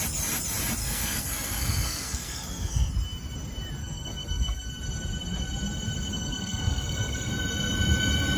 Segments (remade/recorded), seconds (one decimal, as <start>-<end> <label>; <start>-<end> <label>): 0.0-0.8 recorded; 0.8-2.9 remade; 2.9-3.8 recorded; 3.8-4.7 remade; 4.7-6.1 recorded; 6.1-7.3 remade; 7.3-8.4 recorded